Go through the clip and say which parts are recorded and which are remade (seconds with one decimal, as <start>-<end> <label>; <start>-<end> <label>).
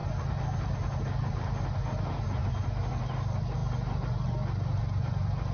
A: 0.0-5.5 recorded